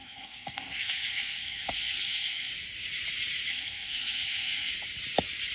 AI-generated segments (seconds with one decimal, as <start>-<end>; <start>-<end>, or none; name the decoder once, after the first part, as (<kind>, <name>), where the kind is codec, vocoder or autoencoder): 0.0-2.5 (codec, SNAC); 3.5-4.7